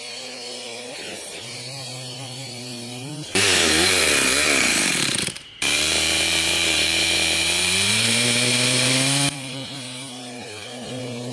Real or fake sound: fake